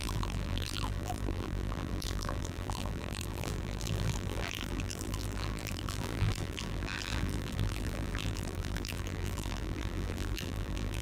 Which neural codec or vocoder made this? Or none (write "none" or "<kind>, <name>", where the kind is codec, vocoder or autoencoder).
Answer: vocoder, BigVGAN v2